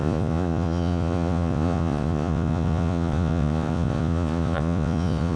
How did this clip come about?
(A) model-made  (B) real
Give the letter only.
A